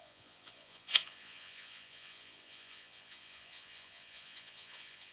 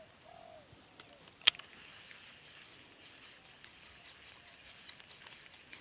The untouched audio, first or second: second